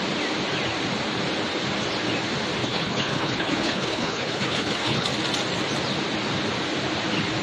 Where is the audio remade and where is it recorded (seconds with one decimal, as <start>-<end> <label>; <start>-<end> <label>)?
0.0-2.6 recorded; 2.6-5.1 remade; 5.1-7.4 recorded